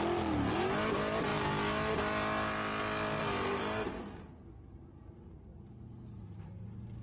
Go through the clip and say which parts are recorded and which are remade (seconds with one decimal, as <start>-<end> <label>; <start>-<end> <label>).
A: 0.0-3.2 recorded; 3.2-4.3 remade; 4.3-7.0 recorded